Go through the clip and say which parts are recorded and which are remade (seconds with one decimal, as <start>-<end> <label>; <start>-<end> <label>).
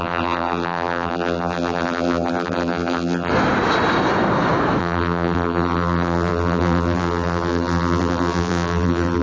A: 0.0-3.3 remade; 3.3-4.8 recorded; 4.8-9.2 remade